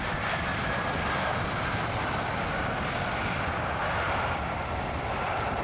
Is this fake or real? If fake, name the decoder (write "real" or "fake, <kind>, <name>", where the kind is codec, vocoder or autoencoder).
real